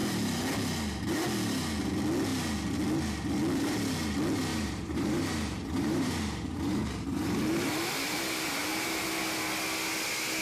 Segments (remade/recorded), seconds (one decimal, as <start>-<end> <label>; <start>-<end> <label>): 0.0-4.5 recorded; 4.5-9.1 remade; 9.1-10.4 recorded